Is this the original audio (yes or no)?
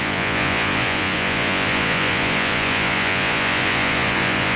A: no